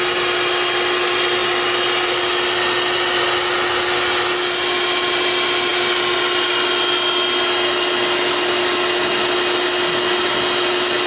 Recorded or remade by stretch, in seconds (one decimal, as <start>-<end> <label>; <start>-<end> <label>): 0.0-11.1 recorded

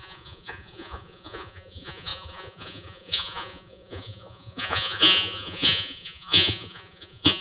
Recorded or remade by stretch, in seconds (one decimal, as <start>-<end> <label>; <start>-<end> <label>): 0.0-7.4 remade

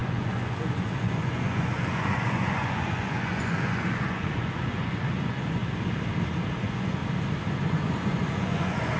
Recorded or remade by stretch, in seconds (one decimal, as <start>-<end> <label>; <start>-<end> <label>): 0.0-5.6 remade; 5.6-6.6 recorded; 6.6-7.0 remade; 7.0-7.5 recorded; 7.5-9.0 remade

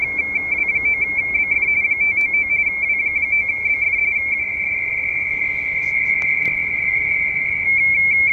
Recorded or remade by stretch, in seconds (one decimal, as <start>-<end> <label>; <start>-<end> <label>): 0.0-0.6 recorded; 0.6-2.5 remade; 2.5-4.1 recorded; 4.1-5.4 remade; 5.4-8.3 recorded

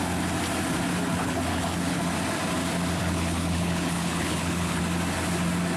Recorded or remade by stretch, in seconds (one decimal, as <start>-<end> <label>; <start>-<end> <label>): 0.0-1.1 recorded; 1.1-2.0 remade; 2.0-3.0 recorded; 3.0-4.8 remade; 4.8-5.8 recorded

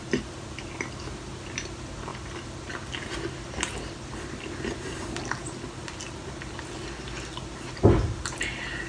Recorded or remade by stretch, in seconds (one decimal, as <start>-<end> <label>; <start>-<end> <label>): 0.0-8.9 recorded